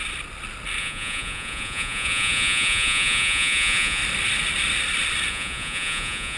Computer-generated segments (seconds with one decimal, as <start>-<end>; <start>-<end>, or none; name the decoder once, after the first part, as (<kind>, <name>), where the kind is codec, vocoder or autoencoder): 0.8-4.0 (vocoder, Vocos); 5.3-6.4